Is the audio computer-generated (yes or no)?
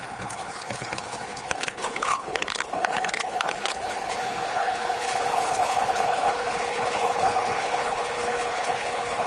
yes